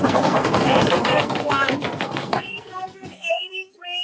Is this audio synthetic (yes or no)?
yes